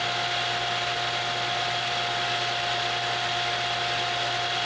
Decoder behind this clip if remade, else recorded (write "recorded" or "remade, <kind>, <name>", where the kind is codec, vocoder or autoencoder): recorded